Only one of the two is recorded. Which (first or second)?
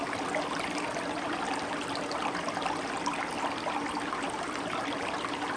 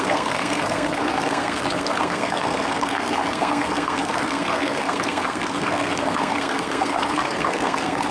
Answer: first